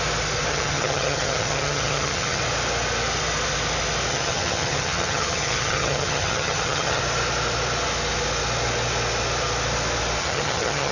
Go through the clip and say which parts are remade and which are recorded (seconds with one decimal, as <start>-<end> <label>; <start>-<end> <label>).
0.0-0.5 recorded; 0.5-2.4 remade; 2.4-4.1 recorded; 4.1-7.0 remade; 7.0-10.2 recorded; 10.2-10.9 remade